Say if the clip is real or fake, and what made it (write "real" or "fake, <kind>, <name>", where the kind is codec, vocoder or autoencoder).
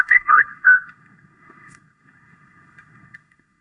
fake, codec, SNAC